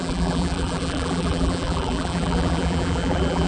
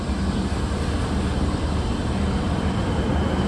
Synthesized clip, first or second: first